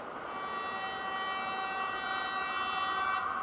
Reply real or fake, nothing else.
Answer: real